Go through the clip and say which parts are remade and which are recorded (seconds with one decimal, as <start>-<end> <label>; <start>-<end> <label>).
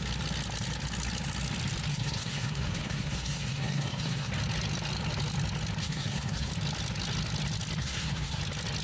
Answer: 0.0-1.9 recorded; 1.9-4.3 remade; 4.3-5.8 recorded; 5.8-6.5 remade; 6.5-7.8 recorded; 7.8-8.4 remade; 8.4-8.8 recorded